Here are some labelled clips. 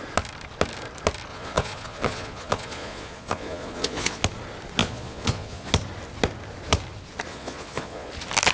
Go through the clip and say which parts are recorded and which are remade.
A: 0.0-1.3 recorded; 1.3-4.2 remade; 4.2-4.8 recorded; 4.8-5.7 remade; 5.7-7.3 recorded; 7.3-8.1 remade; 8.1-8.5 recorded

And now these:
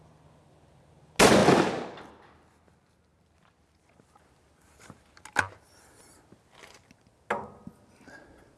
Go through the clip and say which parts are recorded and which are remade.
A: 0.0-8.6 recorded

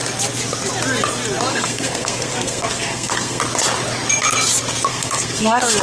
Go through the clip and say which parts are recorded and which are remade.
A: 0.0-1.5 recorded; 1.5-3.4 remade; 3.4-4.9 recorded; 4.9-5.8 remade

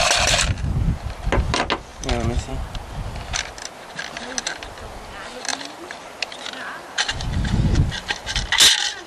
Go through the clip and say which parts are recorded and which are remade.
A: 0.0-1.9 recorded; 1.9-2.5 remade; 2.5-9.1 recorded